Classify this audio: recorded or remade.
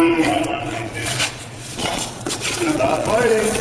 remade